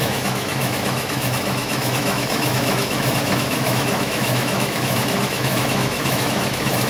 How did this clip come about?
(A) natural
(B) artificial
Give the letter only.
B